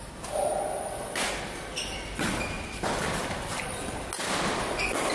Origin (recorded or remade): recorded